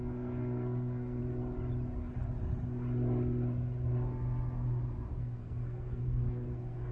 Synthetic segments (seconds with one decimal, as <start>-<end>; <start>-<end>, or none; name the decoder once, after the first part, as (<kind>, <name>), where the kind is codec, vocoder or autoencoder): 0.0-1.2 (codec, SNAC); 5.2-6.9